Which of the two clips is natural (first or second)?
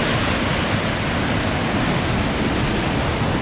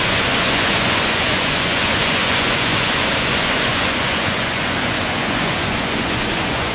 first